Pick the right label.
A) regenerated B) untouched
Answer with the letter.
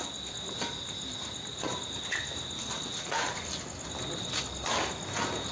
B